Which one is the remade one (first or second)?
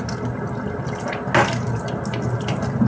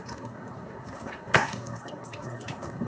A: second